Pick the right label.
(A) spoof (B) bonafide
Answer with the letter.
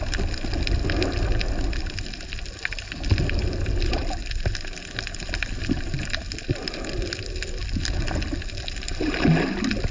B